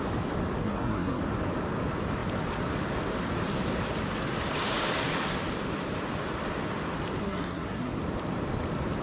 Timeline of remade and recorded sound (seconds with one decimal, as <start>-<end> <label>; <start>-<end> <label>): 0.0-0.6 recorded; 0.6-1.2 remade; 1.2-7.2 recorded; 7.2-8.0 remade; 8.0-9.0 recorded